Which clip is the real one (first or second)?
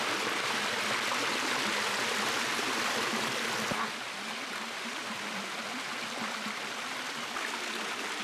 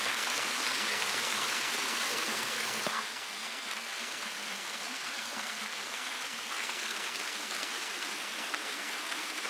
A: first